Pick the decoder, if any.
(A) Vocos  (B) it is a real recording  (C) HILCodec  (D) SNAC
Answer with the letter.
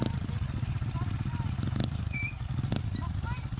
B